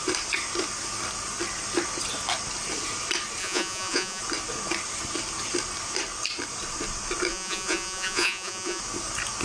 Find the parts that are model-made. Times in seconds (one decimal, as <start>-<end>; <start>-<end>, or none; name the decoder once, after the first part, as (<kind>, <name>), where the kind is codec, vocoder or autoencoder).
3.4-4.2 (vocoder, Vocos); 7.3-8.8